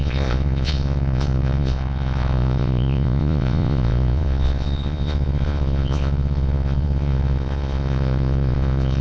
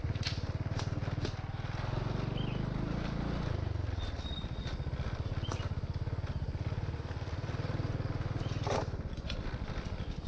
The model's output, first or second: first